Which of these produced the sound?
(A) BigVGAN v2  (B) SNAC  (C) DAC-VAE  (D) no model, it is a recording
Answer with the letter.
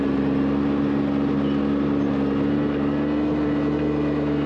D